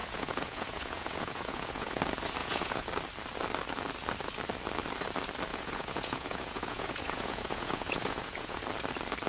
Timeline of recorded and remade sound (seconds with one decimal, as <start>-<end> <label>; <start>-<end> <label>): 0.0-2.0 remade; 2.0-2.4 recorded; 2.4-2.9 remade; 2.9-5.5 recorded; 5.5-8.6 remade; 8.6-9.3 recorded